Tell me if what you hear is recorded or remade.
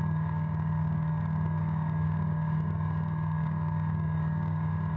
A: remade